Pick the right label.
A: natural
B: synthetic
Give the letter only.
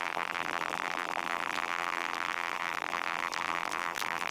B